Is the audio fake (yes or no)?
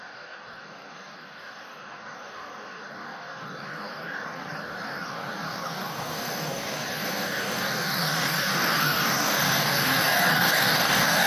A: yes